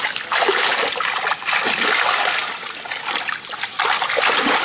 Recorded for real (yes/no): yes